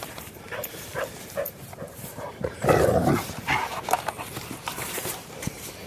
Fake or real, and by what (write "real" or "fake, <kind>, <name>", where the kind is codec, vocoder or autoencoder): fake, vocoder, BigVGAN v2